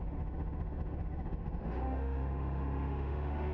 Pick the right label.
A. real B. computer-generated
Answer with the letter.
B